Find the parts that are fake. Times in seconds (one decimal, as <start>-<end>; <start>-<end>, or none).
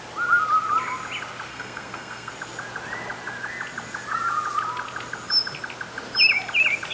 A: 1.5-2.3